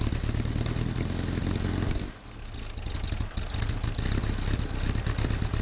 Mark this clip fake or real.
real